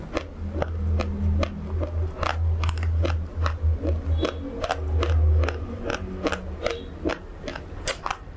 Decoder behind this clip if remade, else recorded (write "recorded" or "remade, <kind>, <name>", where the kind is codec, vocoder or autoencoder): recorded